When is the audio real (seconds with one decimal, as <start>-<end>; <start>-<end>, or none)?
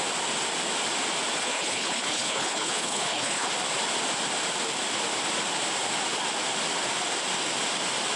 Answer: 0.0-1.4; 3.5-8.2